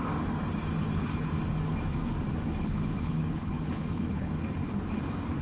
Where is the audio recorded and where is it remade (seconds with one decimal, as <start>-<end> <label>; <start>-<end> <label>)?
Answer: 0.0-0.8 recorded; 0.8-1.3 remade; 1.3-2.6 recorded; 2.6-4.3 remade; 4.3-5.4 recorded